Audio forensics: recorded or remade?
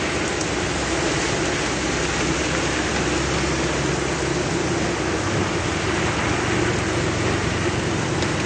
recorded